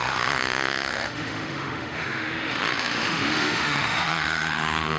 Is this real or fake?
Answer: fake